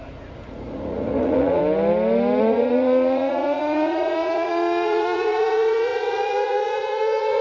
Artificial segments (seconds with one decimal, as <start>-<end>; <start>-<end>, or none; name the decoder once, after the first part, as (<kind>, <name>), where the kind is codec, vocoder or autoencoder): 0.0-1.6 (vocoder, Vocos); 2.4-7.4